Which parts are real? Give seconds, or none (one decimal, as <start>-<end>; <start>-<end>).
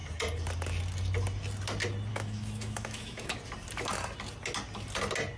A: 0.0-2.1; 3.4-5.4